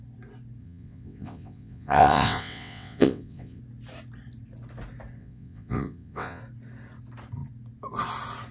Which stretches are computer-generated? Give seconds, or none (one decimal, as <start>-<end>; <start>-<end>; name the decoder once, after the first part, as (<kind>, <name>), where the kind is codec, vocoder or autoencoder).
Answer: 0.6-3.6 (vocoder, WaveNeXt); 5.2-6.4